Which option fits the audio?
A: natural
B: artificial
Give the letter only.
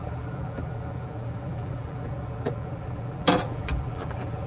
B